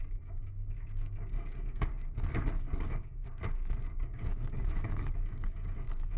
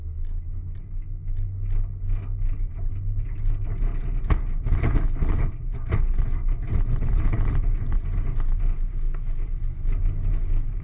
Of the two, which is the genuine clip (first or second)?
second